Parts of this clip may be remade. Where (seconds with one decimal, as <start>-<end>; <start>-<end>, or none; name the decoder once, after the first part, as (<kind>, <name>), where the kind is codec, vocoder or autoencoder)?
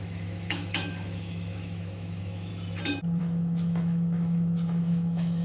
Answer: 0.0-2.5 (autoencoder, DAC-VAE); 3.2-5.4